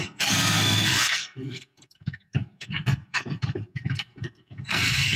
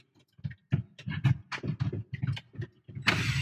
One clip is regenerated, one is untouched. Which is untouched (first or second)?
second